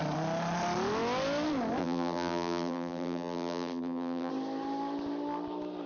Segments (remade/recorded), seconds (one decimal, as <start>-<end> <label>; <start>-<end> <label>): 0.0-1.8 recorded; 1.8-4.3 remade; 4.3-5.9 recorded